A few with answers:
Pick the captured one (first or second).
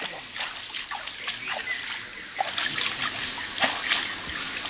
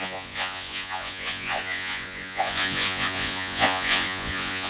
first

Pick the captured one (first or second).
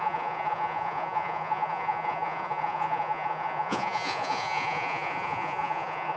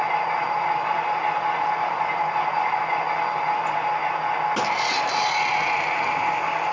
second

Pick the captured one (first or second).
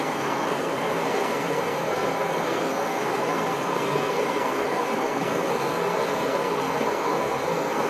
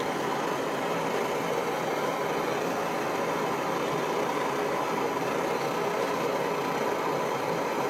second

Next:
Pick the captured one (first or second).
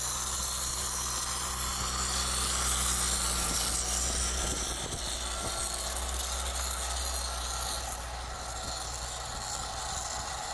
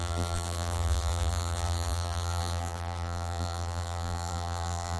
first